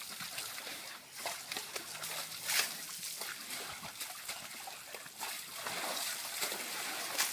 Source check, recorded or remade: recorded